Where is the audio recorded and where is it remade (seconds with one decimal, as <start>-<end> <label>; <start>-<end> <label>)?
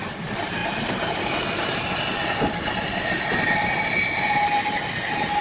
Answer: 0.0-5.4 recorded